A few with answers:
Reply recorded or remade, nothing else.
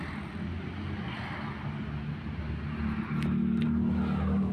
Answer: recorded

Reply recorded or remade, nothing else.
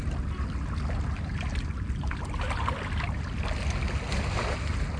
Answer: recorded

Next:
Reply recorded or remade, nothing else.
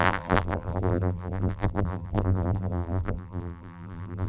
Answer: remade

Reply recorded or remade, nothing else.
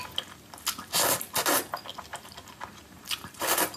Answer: recorded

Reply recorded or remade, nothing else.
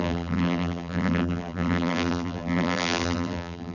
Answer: remade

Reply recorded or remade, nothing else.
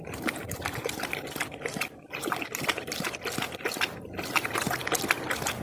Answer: recorded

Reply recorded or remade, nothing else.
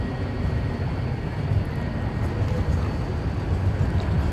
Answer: recorded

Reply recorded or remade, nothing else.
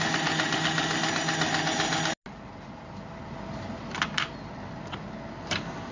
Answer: recorded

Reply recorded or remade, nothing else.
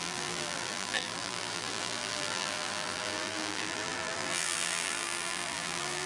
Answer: remade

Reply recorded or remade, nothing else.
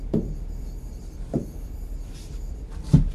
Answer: remade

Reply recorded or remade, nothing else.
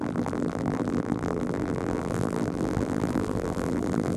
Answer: remade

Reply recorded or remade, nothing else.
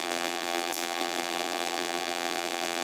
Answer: remade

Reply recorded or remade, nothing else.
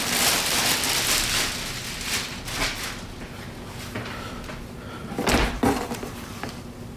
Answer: recorded